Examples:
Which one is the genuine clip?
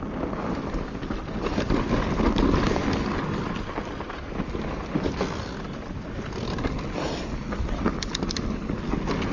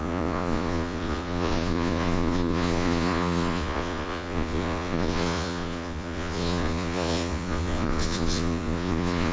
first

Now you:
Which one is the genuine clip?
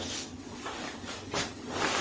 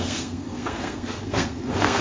first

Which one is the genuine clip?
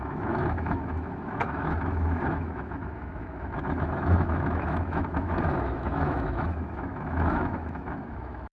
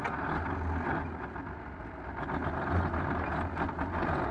second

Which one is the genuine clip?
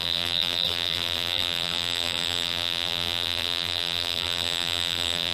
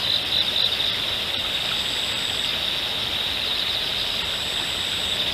second